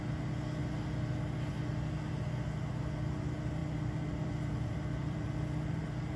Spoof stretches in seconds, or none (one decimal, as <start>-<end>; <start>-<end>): 3.6-6.2